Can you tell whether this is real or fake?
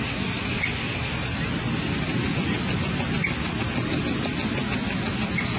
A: real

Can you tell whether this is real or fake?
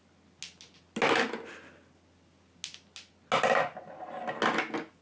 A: real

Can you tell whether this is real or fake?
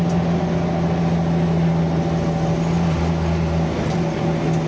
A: real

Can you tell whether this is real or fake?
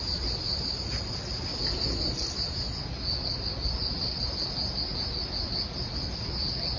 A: real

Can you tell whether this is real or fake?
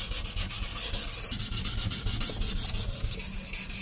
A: real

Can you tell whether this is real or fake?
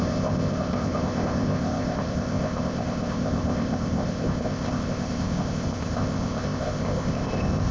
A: fake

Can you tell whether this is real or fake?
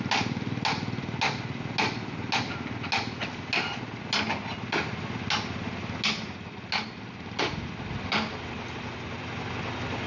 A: real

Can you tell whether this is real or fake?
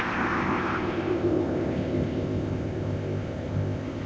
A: fake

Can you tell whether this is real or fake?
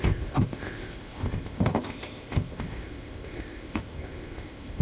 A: fake